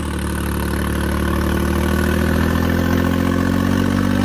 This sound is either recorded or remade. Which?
recorded